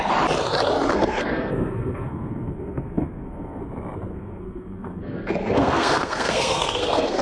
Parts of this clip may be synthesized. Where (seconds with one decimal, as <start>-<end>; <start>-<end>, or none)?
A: 0.9-3.6; 4.1-7.2